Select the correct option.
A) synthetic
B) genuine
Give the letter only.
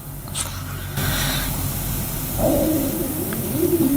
B